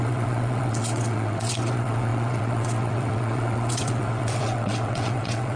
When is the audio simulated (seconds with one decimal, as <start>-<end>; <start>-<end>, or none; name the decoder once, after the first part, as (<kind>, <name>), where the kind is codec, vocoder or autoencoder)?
0.0-5.6 (vocoder, WaveNeXt)